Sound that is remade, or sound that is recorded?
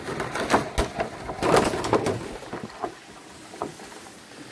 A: recorded